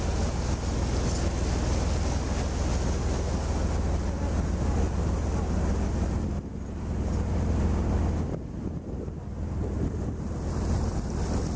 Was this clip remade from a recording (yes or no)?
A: no